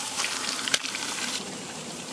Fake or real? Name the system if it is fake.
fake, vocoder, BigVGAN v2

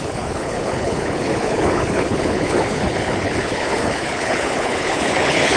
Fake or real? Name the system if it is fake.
fake, codec, HILCodec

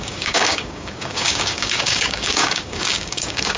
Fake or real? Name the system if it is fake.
fake, codec, DAC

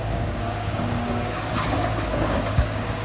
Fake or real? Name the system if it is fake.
fake, codec, DAC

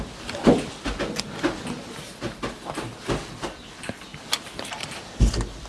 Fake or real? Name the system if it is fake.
real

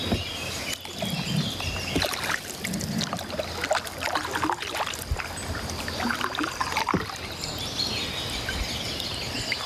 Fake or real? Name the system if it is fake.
real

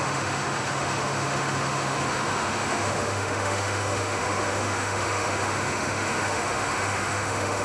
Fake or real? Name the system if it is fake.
fake, autoencoder, DAC-VAE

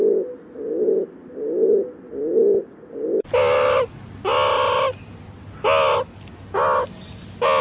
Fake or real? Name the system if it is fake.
real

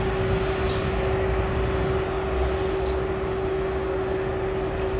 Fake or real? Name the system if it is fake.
real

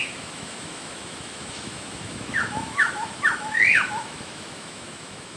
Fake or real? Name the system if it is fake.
fake, autoencoder, DAC-VAE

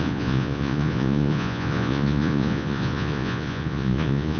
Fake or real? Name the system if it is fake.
fake, vocoder, Vocos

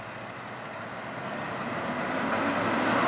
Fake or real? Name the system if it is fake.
real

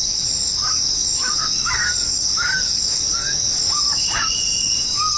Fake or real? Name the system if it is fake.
fake, codec, DAC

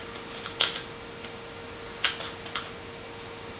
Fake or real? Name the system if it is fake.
real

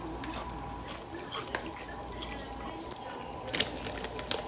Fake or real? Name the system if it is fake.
real